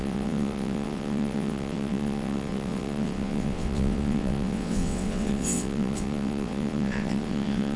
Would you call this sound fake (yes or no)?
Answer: yes